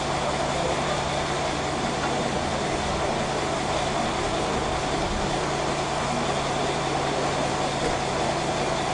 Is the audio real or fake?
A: real